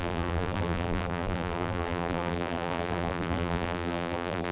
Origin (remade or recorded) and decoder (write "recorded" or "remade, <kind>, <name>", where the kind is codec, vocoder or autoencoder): remade, vocoder, BigVGAN v2